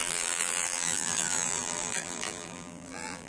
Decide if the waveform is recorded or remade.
remade